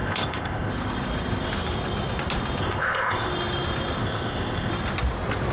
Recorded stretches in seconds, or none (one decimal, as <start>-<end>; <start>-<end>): 0.7-2.6; 3.3-4.0; 4.7-5.5